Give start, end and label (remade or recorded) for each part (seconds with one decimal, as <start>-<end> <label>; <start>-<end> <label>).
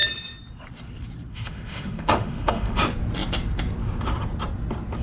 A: 0.0-1.3 recorded; 1.3-2.8 remade; 2.8-5.0 recorded